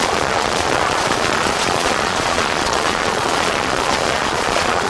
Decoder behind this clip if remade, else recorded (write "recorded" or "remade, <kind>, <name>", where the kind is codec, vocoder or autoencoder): remade, vocoder, Vocos